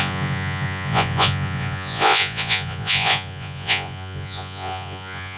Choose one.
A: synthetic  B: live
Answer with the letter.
A